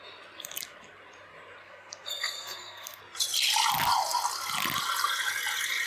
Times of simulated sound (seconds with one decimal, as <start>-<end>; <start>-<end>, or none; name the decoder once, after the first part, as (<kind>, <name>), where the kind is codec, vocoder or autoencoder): 1.6-3.0 (codec, SNAC)